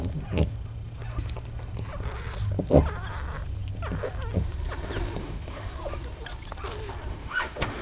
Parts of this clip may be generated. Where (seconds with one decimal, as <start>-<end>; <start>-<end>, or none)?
5.2-5.7; 7.1-7.8